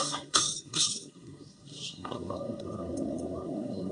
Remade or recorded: remade